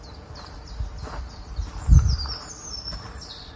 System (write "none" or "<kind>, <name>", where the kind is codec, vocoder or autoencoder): none